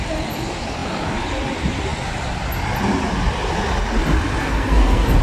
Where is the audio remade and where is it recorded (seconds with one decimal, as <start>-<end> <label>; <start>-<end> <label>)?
0.0-4.4 recorded; 4.4-5.2 remade